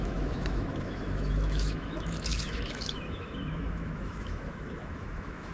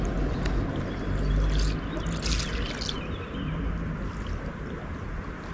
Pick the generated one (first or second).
first